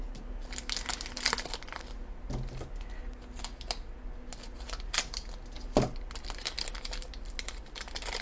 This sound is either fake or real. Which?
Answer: real